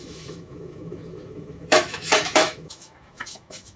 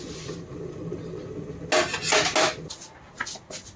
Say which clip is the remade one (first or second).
first